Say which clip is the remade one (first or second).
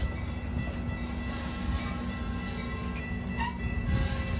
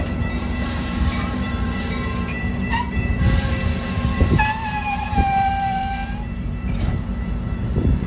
second